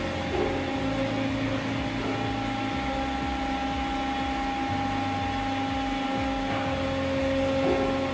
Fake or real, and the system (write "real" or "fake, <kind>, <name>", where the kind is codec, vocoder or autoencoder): real